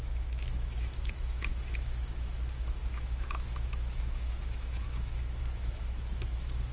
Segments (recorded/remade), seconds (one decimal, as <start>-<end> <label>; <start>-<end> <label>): 0.0-6.7 remade